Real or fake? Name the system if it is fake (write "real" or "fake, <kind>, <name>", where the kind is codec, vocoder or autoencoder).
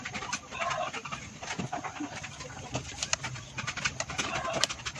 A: real